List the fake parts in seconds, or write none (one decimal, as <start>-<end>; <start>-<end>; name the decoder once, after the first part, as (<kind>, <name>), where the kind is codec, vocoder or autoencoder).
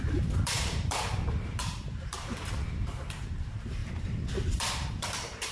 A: 0.0-5.5 (vocoder, BigVGAN v2)